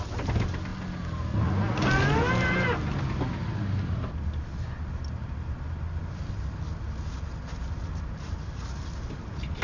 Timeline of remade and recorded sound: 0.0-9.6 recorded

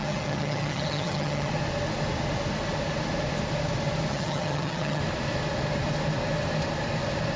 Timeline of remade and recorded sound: 0.0-1.5 remade; 1.5-4.1 recorded; 4.1-5.0 remade; 5.0-7.4 recorded

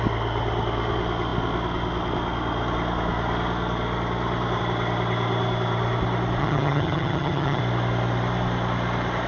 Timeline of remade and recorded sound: 0.0-6.4 recorded; 6.4-7.6 remade; 7.6-9.3 recorded

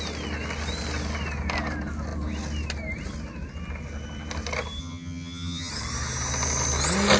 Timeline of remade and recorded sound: 0.0-4.8 recorded; 4.8-5.7 remade; 5.7-7.2 recorded

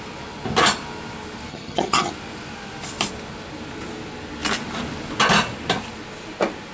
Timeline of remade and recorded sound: 0.0-1.5 recorded; 1.5-2.1 remade; 2.1-6.7 recorded